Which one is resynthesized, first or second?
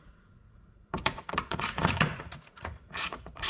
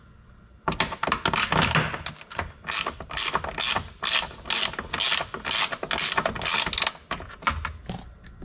first